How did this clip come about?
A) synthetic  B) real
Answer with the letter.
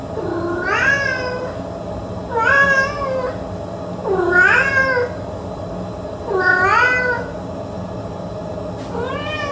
B